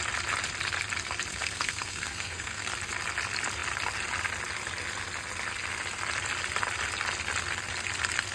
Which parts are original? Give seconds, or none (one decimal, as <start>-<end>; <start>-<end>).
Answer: 0.0-1.3; 2.7-8.3